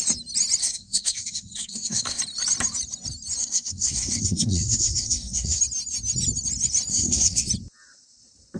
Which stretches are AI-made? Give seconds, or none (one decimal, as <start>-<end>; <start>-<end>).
0.6-2.2; 3.4-5.6; 6.9-7.5